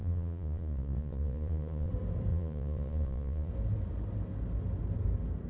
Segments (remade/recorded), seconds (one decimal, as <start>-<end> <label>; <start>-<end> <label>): 0.0-1.9 remade; 1.9-2.3 recorded; 2.3-3.5 remade; 3.5-5.5 recorded